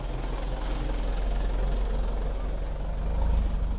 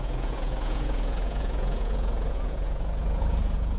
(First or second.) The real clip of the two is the first